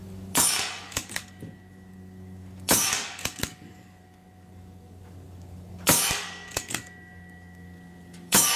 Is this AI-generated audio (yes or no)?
yes